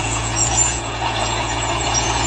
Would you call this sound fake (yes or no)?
yes